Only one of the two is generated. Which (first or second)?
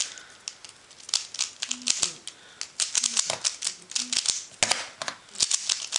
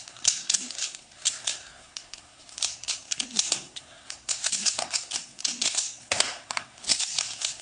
second